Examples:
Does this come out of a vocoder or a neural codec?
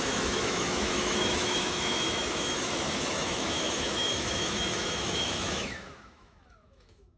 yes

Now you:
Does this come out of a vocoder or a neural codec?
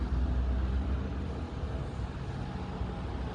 no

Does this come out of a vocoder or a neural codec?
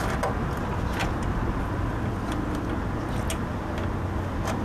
no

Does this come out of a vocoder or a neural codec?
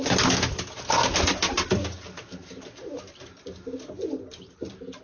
no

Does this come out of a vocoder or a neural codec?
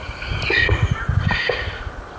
no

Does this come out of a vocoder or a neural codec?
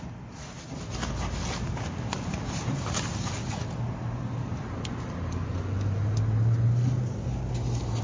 no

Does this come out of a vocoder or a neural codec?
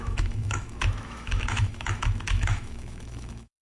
yes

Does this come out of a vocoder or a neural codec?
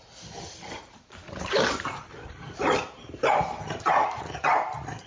yes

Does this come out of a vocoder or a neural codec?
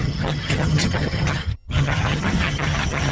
yes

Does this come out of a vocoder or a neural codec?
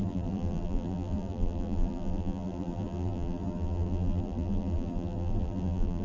yes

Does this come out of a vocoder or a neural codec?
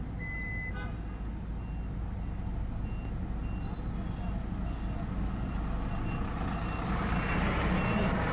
no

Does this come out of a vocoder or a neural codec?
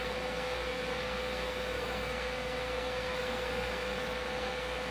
yes